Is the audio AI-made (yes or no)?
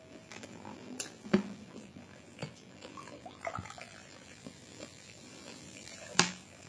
yes